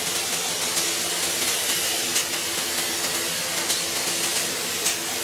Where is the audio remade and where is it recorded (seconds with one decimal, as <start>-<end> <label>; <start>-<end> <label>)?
0.0-5.2 recorded